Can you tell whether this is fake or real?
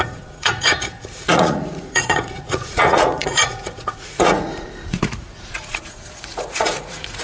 fake